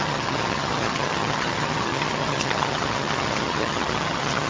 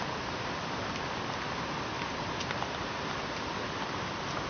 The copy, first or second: first